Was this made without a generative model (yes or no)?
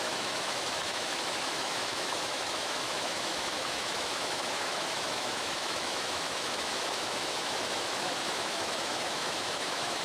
no